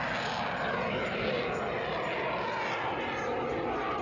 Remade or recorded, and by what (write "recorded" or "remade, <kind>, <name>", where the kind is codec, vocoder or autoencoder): recorded